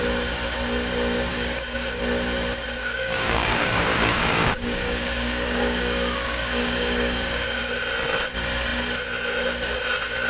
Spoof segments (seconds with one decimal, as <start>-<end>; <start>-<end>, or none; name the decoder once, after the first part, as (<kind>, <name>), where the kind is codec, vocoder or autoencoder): 1.3-2.0 (codec, DAC); 2.8-7.6